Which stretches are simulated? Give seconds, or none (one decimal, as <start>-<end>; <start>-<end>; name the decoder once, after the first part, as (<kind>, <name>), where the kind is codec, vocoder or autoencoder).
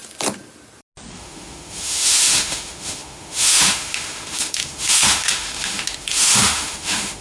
1.1-7.2 (autoencoder, DAC-VAE)